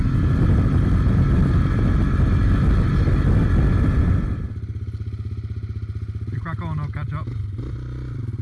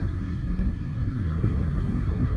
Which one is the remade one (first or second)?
second